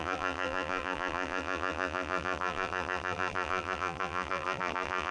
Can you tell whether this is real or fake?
fake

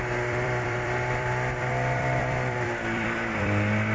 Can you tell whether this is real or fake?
fake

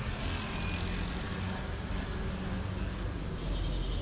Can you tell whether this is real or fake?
real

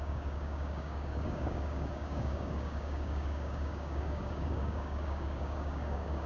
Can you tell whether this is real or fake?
fake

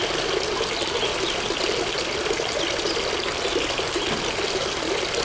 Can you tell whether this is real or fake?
real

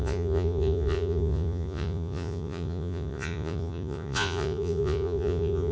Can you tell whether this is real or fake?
fake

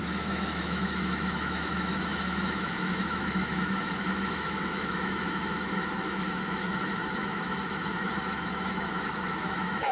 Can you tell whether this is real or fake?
fake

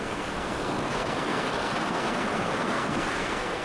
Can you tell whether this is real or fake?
fake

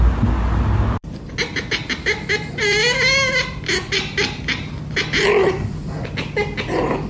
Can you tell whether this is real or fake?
real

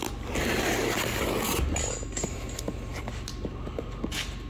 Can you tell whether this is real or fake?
real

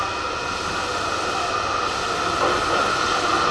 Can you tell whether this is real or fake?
real